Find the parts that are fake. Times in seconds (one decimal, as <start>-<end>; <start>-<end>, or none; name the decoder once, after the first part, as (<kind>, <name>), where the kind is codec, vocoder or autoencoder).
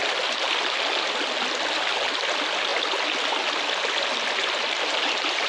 4.4-5.5 (vocoder, BigVGAN v2)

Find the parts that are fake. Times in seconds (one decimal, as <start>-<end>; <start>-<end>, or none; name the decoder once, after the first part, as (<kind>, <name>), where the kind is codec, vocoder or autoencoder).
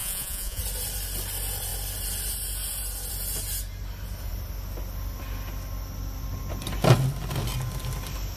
0.0-0.6 (vocoder, Vocos)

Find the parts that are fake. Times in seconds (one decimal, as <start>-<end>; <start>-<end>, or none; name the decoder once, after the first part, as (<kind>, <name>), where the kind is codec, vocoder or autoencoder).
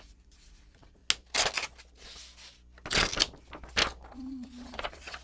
0.0-1.0 (vocoder, Vocos); 4.1-5.2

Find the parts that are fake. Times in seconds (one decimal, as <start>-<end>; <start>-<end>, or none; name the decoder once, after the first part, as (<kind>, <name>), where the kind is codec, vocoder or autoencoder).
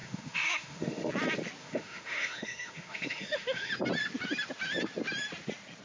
0.0-1.1 (autoencoder, DAC-VAE); 1.6-3.7